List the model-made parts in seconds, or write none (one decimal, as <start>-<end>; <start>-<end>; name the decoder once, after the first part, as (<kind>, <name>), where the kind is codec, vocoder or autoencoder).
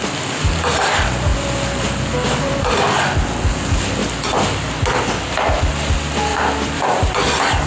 1.3-2.6 (vocoder, BigVGAN v2); 6.3-7.1